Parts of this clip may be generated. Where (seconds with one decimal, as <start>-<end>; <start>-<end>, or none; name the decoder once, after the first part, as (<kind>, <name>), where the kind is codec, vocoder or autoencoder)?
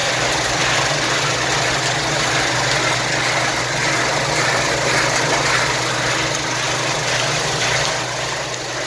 0.0-1.8 (vocoder, BigVGAN v2)